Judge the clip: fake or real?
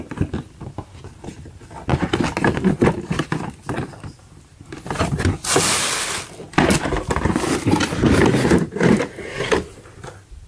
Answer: real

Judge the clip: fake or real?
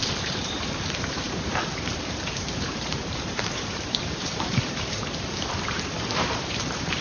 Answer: fake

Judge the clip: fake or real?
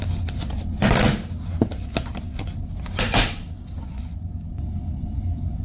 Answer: real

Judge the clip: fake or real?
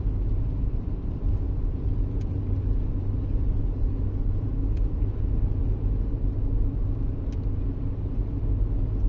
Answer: fake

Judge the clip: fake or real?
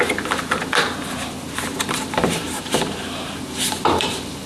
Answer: fake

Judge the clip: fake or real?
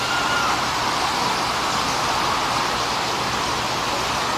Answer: real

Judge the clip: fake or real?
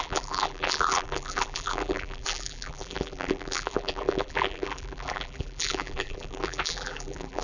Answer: fake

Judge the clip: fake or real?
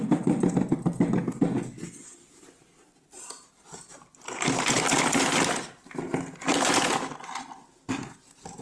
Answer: real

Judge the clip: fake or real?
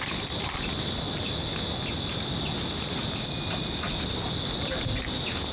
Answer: real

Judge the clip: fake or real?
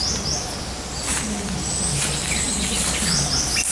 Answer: real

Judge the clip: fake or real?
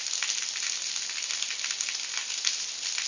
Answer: real